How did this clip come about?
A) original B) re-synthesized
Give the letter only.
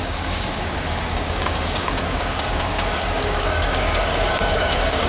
B